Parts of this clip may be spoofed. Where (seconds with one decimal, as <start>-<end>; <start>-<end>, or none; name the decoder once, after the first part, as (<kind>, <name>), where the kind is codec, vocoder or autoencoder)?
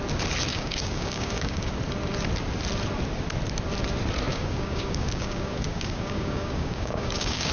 0.5-1.7 (codec, DAC); 4.3-7.5